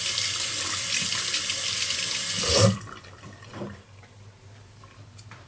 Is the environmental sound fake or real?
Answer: real